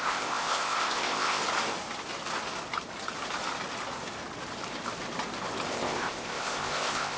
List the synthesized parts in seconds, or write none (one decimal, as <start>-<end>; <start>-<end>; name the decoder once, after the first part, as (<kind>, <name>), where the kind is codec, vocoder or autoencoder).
0.0-1.4 (codec, ZipCodec); 5.7-7.2